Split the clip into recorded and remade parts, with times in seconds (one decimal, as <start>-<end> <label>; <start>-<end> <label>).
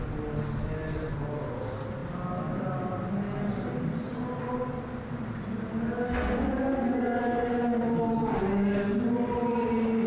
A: 0.0-10.1 recorded